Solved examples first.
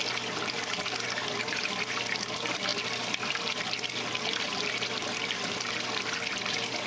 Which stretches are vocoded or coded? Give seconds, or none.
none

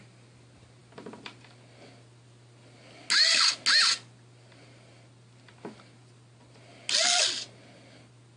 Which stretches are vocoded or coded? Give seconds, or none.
none